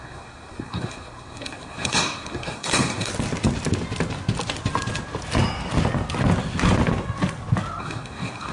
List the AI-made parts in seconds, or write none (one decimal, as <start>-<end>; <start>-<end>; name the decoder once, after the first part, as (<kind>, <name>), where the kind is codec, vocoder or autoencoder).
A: 0.0-3.1 (codec, SNAC); 7.8-8.5